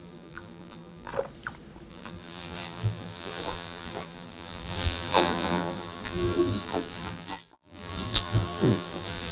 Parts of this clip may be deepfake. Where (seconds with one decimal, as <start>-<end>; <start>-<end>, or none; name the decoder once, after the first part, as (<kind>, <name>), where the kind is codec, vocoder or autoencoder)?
0.0-1.1 (vocoder, BigVGAN v2); 1.9-9.3